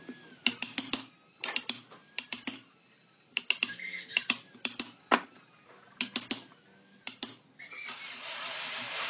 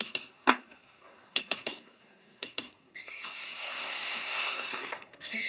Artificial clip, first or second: second